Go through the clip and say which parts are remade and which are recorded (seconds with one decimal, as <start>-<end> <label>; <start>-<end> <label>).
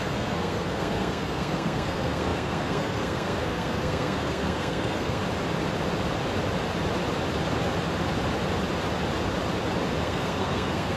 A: 0.0-5.2 remade; 5.2-10.0 recorded; 10.0-11.0 remade